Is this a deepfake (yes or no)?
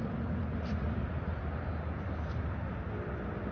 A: no